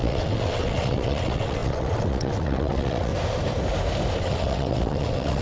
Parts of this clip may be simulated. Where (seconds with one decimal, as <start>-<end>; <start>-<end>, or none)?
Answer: 0.0-3.1; 4.2-5.4